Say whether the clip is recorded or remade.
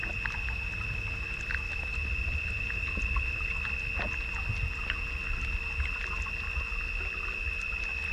recorded